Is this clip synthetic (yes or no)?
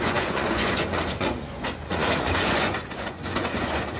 yes